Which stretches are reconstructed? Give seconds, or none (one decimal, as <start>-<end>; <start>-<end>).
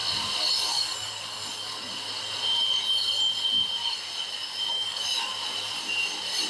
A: 0.7-1.7; 4.7-5.3